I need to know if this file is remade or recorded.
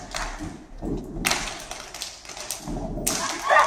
recorded